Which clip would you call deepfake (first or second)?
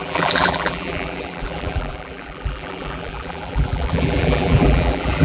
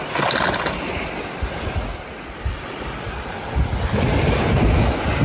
first